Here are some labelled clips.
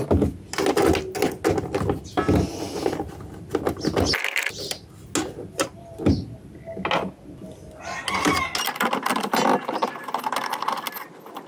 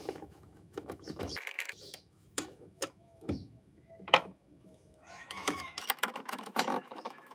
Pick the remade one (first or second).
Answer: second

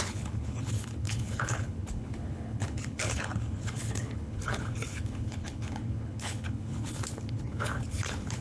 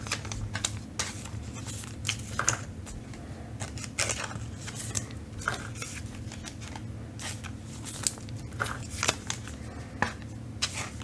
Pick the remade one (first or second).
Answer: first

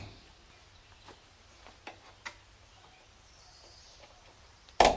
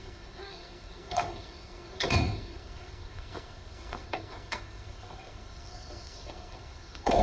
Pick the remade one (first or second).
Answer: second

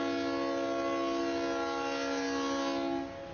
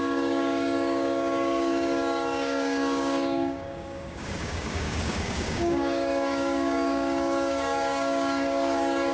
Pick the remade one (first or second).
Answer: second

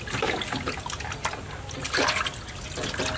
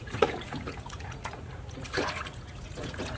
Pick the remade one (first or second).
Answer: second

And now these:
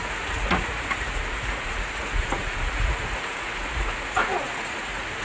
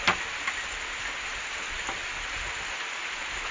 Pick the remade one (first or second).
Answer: first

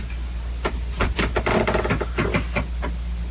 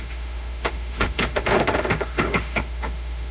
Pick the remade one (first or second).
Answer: second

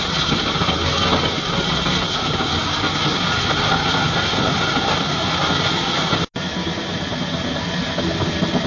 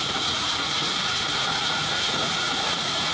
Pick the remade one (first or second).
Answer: second